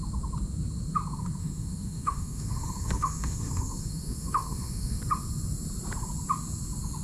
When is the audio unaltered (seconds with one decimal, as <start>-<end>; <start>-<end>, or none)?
0.0-1.4; 5.0-7.0